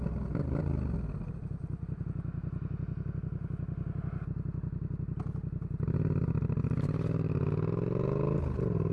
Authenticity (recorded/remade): recorded